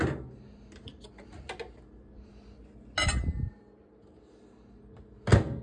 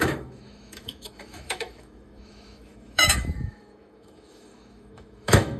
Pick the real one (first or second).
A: first